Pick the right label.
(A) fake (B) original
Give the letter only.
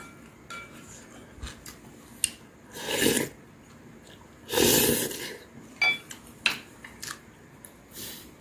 B